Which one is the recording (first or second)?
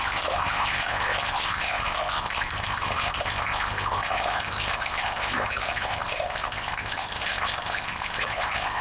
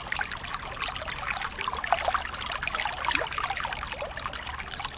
second